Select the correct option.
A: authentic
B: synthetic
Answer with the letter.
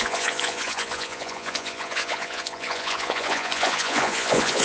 B